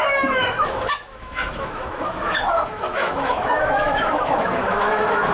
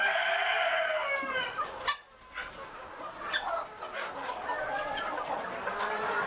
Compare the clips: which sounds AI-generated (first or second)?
first